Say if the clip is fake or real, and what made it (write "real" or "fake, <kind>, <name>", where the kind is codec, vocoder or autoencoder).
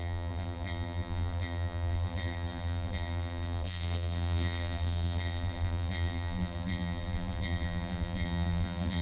fake, vocoder, BigVGAN v2